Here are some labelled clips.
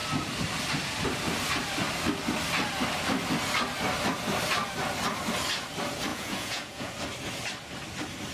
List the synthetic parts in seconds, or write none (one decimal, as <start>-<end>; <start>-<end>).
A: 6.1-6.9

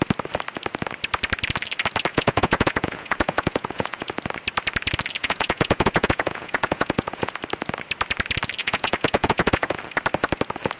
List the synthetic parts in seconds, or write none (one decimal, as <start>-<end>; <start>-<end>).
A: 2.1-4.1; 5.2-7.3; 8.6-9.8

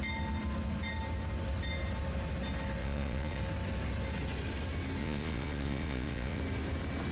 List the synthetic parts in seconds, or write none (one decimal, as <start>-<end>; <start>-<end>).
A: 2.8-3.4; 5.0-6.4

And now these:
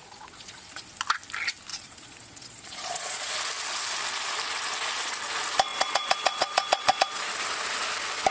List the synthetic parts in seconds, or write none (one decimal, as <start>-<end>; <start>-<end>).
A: 0.0-0.9; 1.7-3.4; 5.7-7.2

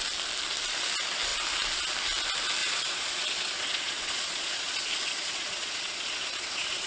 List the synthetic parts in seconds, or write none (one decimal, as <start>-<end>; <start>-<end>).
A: 2.6-6.9

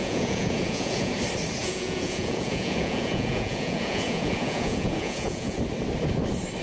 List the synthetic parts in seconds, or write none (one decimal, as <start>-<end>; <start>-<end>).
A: 0.0-1.1; 1.6-5.6

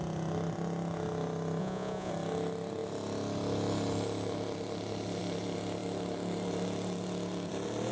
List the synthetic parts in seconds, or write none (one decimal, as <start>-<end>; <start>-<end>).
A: 1.6-2.1